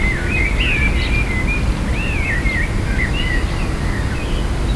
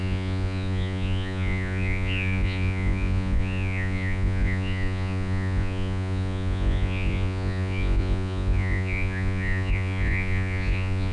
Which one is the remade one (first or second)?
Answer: second